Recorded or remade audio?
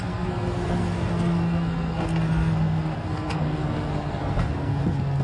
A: remade